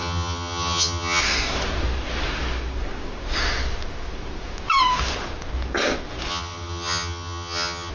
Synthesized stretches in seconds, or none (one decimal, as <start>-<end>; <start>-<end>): 0.0-1.2; 6.3-7.9